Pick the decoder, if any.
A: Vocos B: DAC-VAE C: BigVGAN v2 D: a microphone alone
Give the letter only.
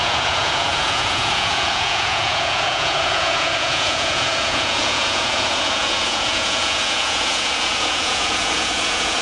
A